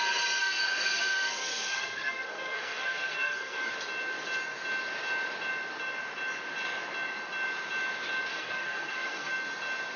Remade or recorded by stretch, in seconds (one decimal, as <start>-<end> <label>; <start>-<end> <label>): 0.0-0.4 recorded; 0.4-3.7 remade; 3.7-8.3 recorded; 8.3-9.3 remade; 9.3-10.0 recorded